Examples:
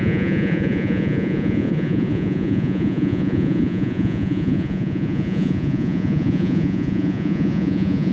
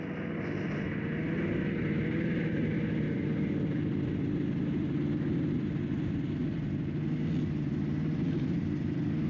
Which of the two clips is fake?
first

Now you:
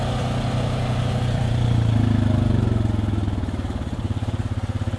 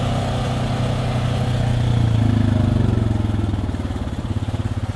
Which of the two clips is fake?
first